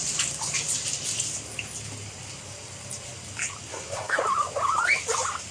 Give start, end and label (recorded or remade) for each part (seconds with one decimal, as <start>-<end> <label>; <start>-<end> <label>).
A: 0.0-3.7 recorded; 3.7-4.2 remade; 4.2-5.5 recorded